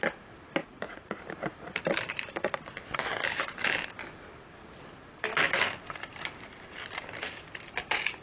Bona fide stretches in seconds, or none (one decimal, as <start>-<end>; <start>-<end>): 0.0-0.6; 1.2-8.2